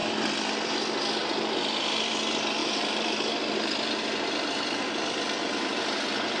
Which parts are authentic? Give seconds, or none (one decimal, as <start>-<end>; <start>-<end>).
0.7-2.6; 4.0-6.4